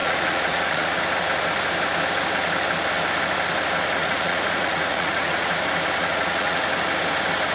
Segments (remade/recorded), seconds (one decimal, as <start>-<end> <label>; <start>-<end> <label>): 0.0-1.0 remade; 1.0-4.0 recorded; 4.0-5.5 remade; 5.5-6.0 recorded; 6.0-6.6 remade; 6.6-7.5 recorded